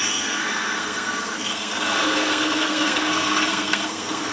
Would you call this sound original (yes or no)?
no